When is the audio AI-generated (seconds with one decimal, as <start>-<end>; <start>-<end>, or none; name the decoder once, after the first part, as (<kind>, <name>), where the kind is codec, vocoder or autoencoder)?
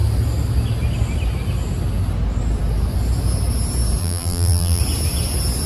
4.0-4.8 (vocoder, BigVGAN v2)